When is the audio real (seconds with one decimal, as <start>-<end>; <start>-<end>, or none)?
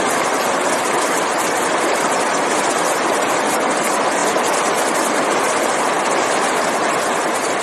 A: 4.2-4.9